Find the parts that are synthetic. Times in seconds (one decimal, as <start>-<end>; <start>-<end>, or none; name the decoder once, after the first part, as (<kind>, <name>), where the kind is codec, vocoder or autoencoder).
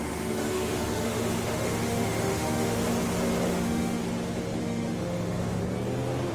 0.0-2.8 (autoencoder, DAC-VAE); 3.5-4.0; 4.6-5.6